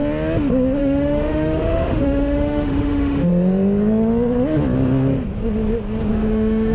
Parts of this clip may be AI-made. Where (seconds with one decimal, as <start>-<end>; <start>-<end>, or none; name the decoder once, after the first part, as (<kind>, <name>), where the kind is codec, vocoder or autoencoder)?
0.8-3.3 (autoencoder, DAC-VAE); 6.1-6.7